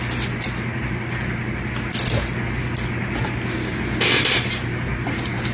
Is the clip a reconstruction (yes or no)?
no